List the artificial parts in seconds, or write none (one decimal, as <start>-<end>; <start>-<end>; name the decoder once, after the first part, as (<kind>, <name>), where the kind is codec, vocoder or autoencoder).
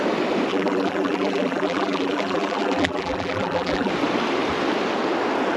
0.5-3.9 (vocoder, BigVGAN v2)